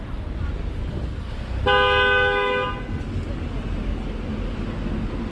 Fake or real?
real